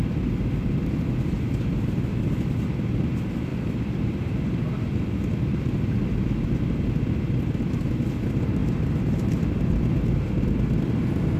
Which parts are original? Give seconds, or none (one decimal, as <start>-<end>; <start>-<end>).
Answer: 0.0-11.4